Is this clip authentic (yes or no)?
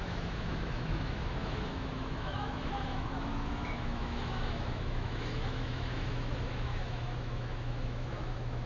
no